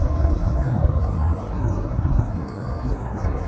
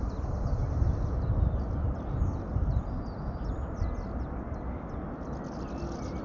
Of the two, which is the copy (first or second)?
first